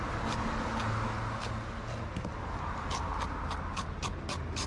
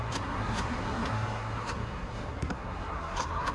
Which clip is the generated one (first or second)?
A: second